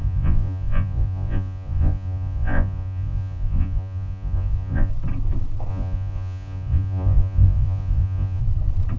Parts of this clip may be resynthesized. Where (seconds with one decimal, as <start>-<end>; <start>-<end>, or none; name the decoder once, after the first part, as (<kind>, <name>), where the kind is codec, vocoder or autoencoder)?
0.0-4.9 (vocoder, Vocos); 5.7-8.4